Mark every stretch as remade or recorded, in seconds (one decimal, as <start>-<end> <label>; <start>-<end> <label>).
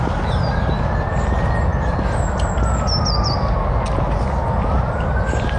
0.0-5.6 recorded